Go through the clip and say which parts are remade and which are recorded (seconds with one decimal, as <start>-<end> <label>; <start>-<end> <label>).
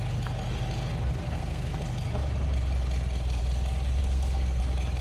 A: 0.0-1.2 recorded; 1.2-1.8 remade; 1.8-4.0 recorded; 4.0-4.6 remade; 4.6-5.0 recorded